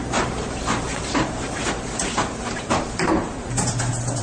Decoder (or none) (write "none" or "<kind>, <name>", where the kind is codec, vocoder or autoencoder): vocoder, BigVGAN v2